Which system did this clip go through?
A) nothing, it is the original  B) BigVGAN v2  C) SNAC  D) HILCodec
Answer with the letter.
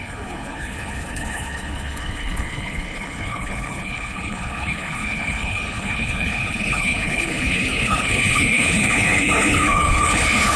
D